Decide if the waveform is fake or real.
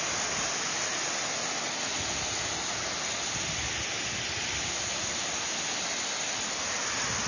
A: real